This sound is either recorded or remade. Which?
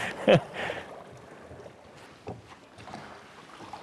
recorded